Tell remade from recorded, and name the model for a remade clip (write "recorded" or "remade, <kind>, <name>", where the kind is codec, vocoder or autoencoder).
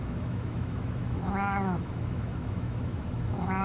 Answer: remade, autoencoder, DAC-VAE